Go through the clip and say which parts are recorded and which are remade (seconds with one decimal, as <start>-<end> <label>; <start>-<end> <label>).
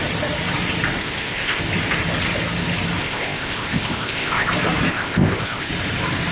0.0-1.0 recorded; 1.0-1.6 remade; 1.6-3.0 recorded; 3.0-4.5 remade; 4.5-4.9 recorded; 4.9-5.7 remade; 5.7-6.3 recorded